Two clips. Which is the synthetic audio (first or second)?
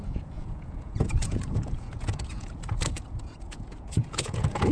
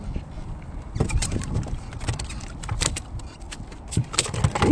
first